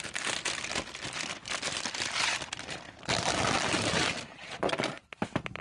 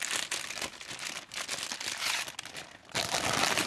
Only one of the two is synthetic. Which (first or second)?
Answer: first